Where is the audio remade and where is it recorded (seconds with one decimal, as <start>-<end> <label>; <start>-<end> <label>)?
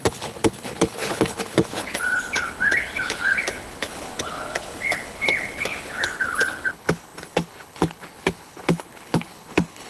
0.0-9.9 remade